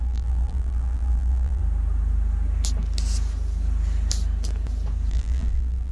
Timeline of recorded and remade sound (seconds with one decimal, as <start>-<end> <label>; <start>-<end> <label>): 0.0-1.6 remade; 1.6-5.1 recorded; 5.1-5.9 remade